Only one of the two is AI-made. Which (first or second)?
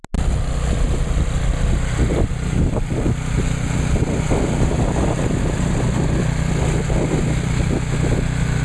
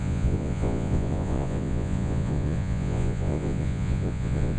second